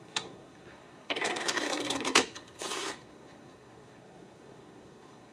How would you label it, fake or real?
fake